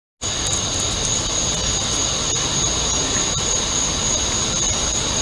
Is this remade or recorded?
recorded